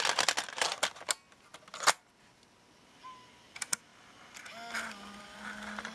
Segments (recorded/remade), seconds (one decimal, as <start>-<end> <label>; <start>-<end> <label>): 0.0-5.9 recorded